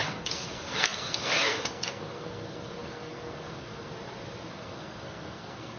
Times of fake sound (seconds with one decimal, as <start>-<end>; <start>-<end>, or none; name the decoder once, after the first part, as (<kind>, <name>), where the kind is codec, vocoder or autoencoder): 0.0-3.9 (codec, SNAC); 4.5-5.8

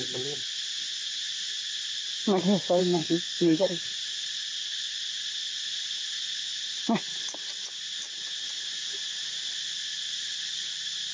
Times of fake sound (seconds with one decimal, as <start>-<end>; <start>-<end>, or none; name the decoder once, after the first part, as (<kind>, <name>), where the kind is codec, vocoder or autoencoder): 2.8-3.8 (codec, SNAC)

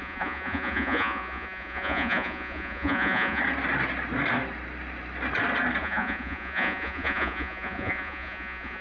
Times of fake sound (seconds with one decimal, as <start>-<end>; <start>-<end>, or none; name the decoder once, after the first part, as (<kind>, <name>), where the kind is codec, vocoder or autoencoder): 0.0-3.4 (vocoder, Vocos); 5.8-8.8

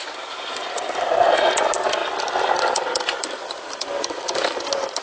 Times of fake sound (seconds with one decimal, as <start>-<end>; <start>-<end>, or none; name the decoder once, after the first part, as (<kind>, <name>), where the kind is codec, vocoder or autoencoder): 2.0-4.6 (vocoder, BigVGAN v2)

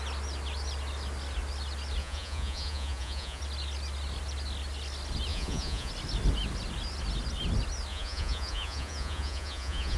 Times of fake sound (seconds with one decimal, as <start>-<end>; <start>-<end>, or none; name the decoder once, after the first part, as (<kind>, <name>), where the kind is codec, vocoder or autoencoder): 2.0-3.4 (vocoder, Vocos); 5.3-5.9; 7.9-10.0